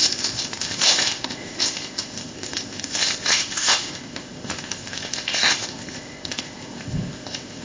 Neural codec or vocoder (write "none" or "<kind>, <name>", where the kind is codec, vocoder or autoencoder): codec, ZipCodec